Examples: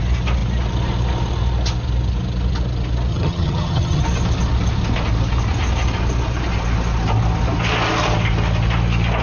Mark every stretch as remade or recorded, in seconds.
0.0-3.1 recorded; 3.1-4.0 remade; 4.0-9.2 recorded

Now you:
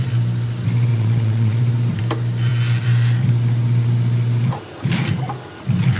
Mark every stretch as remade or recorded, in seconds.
0.0-0.9 recorded; 0.9-1.6 remade; 1.6-6.0 recorded

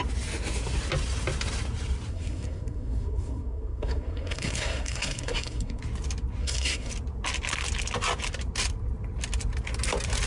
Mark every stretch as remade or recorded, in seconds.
0.0-2.1 recorded; 2.1-5.8 remade; 5.8-6.4 recorded; 6.4-6.9 remade; 6.9-10.3 recorded

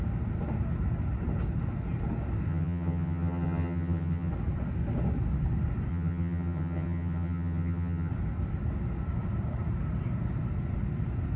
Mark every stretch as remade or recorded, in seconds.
0.0-2.5 recorded; 2.5-4.3 remade; 4.3-5.9 recorded; 5.9-8.1 remade; 8.1-11.4 recorded

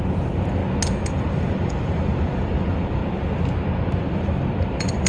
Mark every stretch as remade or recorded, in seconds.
0.0-0.6 remade; 0.6-1.1 recorded; 1.1-3.0 remade; 3.0-3.8 recorded; 3.8-5.1 remade

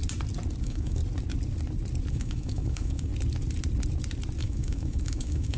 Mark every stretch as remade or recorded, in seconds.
0.0-0.6 recorded; 0.6-1.0 remade; 1.0-2.1 recorded; 2.1-3.1 remade; 3.1-4.4 recorded; 4.4-5.6 remade

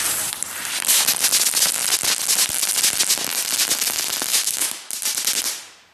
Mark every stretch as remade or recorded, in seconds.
0.0-4.3 recorded; 4.3-4.9 remade; 4.9-5.9 recorded